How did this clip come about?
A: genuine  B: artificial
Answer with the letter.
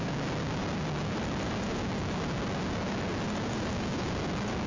A